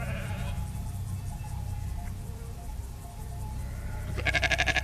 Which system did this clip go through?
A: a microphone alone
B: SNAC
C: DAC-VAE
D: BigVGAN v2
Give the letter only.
A